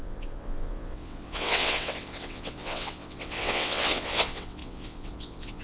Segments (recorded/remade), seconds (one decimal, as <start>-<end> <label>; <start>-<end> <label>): 0.0-5.6 remade